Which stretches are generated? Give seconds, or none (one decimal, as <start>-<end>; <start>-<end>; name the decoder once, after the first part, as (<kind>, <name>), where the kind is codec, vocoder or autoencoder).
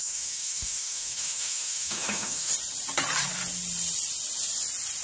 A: 0.0-2.5 (autoencoder, DAC-VAE)